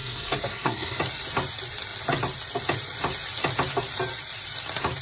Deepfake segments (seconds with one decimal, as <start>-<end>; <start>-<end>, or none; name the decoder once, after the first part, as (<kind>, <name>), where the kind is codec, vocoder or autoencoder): 0.0-1.0 (codec, SNAC)